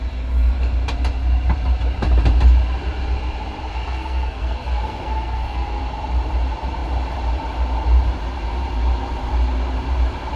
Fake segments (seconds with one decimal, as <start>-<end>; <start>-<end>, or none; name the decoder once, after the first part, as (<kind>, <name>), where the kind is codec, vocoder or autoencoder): 3.7-5.8 (codec, SNAC)